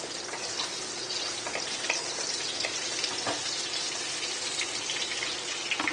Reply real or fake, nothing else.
real